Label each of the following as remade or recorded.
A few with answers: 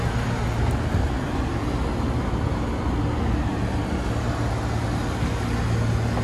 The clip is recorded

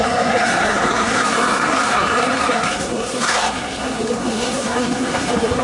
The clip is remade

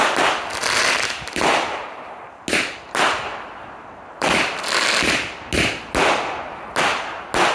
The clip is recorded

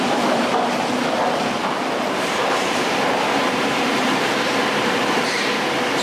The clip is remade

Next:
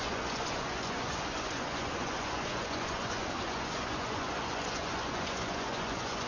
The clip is remade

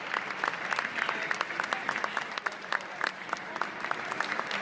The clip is recorded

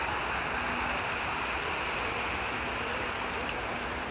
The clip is recorded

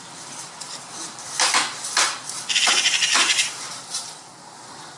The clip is remade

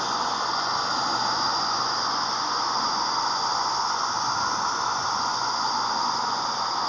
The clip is remade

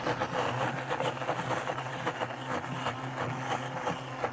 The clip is recorded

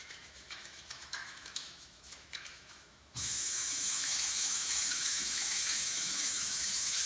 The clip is remade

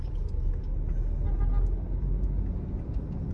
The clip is recorded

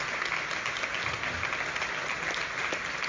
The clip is recorded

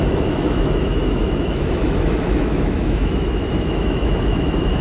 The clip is remade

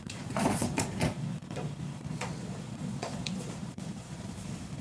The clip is remade